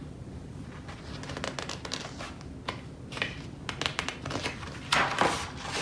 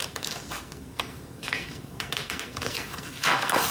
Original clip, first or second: first